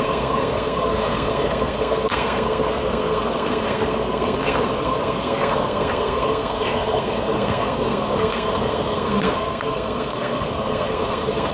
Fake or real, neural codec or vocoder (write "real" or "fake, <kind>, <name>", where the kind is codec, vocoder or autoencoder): fake, codec, SNAC